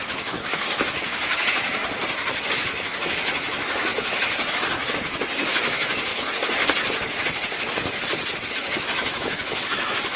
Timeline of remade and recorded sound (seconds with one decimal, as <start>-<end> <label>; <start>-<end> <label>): 0.0-1.8 remade; 1.8-2.5 recorded; 2.5-6.1 remade; 6.1-8.5 recorded; 8.5-10.2 remade